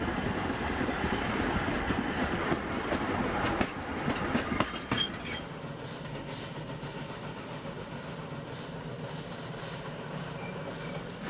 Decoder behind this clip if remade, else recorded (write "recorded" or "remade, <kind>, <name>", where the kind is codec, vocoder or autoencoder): recorded